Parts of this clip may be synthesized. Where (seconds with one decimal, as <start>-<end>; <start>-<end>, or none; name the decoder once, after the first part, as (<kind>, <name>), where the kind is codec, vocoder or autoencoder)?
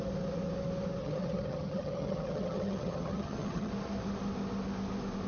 1.0-3.7 (vocoder, HiFi-GAN)